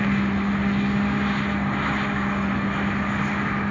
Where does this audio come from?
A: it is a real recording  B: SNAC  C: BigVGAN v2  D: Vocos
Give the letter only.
A